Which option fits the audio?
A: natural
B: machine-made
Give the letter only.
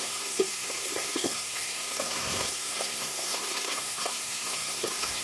B